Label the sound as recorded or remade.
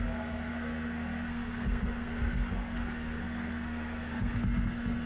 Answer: remade